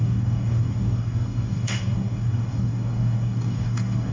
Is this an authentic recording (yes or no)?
no